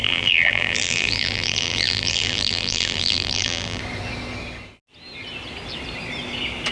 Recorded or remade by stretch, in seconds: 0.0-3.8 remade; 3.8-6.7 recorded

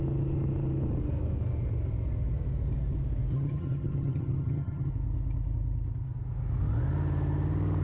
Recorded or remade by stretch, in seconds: 0.0-3.3 recorded; 3.3-4.9 remade; 4.9-7.8 recorded

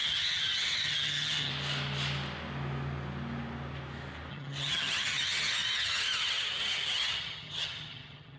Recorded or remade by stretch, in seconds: 0.0-1.5 remade; 1.5-4.3 recorded; 4.3-8.4 remade

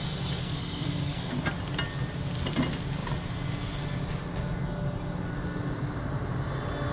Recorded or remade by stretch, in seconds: 0.0-0.4 recorded; 0.4-1.4 remade; 1.4-6.9 recorded